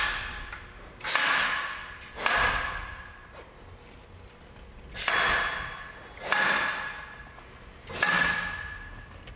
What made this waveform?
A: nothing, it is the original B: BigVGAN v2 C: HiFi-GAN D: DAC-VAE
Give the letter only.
A